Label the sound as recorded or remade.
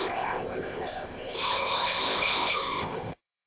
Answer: remade